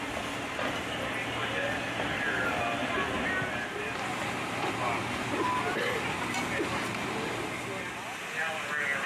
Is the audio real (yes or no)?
yes